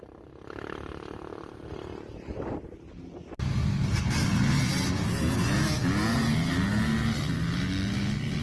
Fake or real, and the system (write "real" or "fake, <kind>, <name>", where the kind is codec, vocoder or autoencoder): real